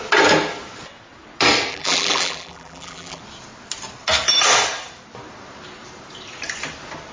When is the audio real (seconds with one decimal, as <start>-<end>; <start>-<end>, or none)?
0.0-1.7; 3.2-7.1